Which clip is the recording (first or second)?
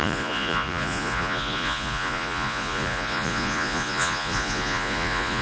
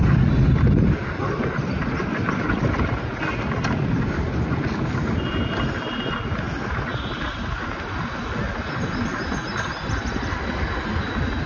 second